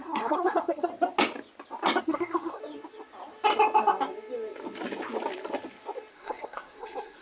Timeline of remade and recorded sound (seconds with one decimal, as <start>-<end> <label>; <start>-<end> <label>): 0.0-0.9 remade; 0.9-2.0 recorded; 2.0-2.6 remade; 2.6-6.1 recorded; 6.1-7.2 remade